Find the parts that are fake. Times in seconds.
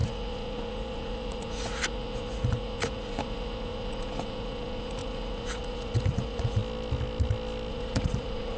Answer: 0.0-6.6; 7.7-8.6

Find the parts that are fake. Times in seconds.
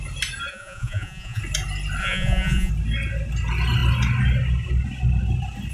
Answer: 0.5-1.4; 2.0-2.7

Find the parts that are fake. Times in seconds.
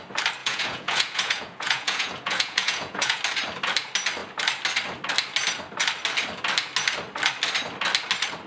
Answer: 0.4-3.2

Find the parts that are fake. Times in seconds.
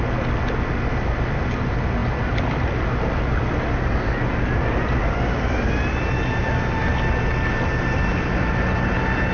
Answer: none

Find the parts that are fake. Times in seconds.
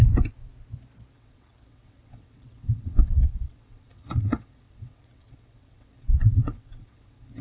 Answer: 1.1-7.4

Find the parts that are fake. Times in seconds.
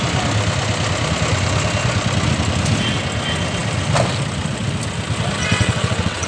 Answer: 5.4-6.3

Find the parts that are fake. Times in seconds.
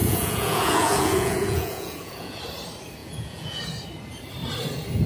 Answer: 0.0-2.4; 3.0-3.6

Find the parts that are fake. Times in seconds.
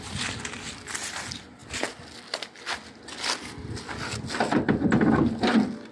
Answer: none